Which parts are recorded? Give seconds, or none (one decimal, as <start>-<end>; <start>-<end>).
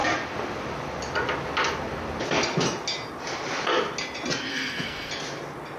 0.0-4.5; 5.1-5.8